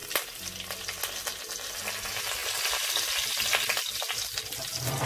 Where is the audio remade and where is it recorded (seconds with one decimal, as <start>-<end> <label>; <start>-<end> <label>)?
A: 0.0-5.1 recorded